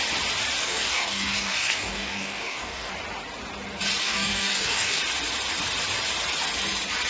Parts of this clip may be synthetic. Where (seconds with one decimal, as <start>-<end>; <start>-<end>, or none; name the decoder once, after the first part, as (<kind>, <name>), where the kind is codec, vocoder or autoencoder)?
0.6-2.9 (codec, DAC); 4.0-5.0